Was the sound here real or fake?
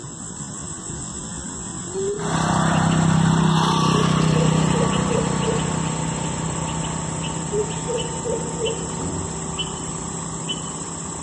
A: real